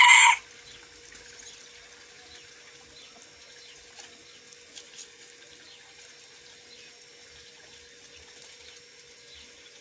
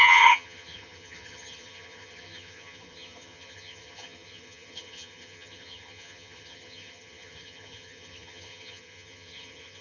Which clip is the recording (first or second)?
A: first